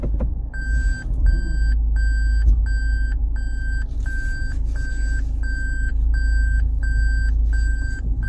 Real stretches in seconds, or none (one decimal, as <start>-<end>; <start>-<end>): 0.0-8.3